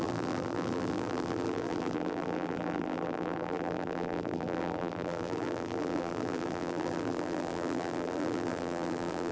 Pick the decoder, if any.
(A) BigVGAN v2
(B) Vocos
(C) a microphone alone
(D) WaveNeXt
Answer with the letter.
A